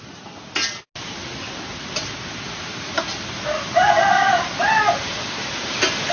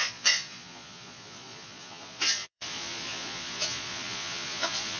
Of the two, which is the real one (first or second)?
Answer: first